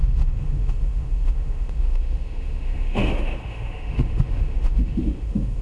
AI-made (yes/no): yes